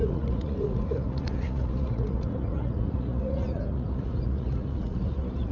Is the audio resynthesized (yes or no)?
yes